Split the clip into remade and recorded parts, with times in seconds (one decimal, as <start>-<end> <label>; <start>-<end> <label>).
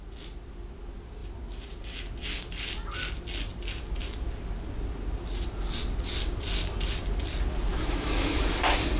0.0-7.7 recorded; 7.7-8.4 remade; 8.4-9.0 recorded